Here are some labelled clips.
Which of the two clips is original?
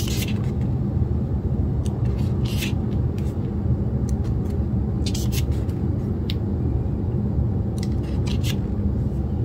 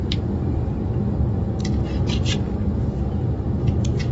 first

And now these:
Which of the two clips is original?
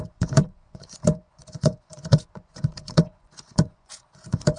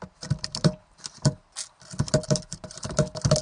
second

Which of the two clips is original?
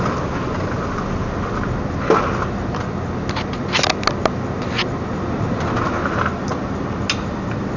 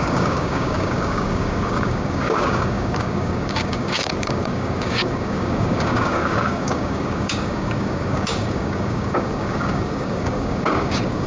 first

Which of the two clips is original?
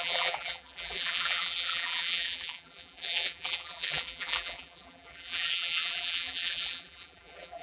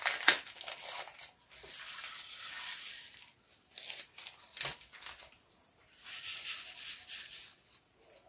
second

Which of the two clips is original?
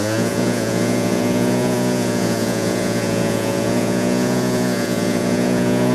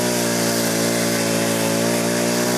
second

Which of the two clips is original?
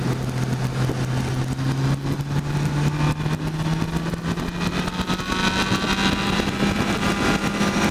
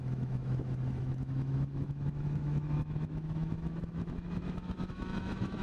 first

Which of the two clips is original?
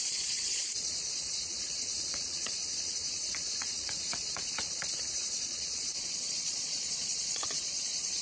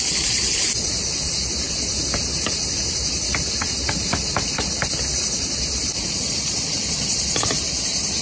second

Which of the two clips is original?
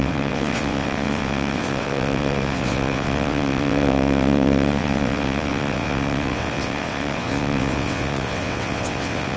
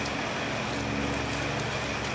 second